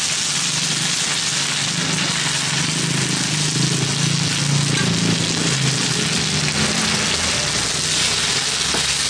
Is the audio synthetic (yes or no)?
no